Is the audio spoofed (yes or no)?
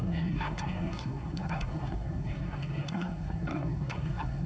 yes